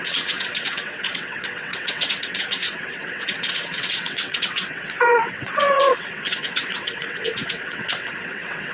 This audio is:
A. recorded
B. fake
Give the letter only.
B